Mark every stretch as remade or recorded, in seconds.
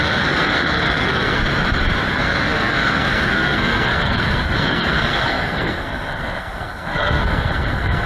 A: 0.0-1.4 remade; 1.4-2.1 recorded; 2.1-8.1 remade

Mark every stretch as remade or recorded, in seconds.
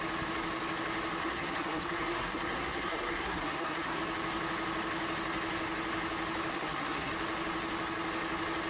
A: 0.0-1.2 recorded; 1.2-4.0 remade; 4.0-6.5 recorded; 6.5-7.1 remade; 7.1-8.7 recorded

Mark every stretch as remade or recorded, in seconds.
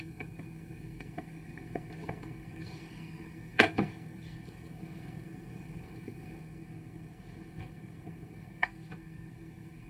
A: 0.0-9.9 remade